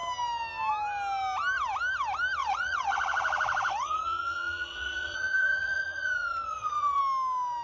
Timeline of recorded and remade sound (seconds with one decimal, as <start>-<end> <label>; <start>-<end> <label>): 0.0-2.4 recorded; 2.4-7.0 remade; 7.0-7.6 recorded